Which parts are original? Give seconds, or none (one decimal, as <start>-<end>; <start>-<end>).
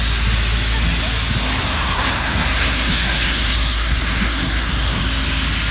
0.0-1.6; 5.0-5.7